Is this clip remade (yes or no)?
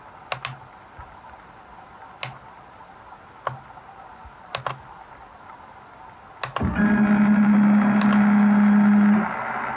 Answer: no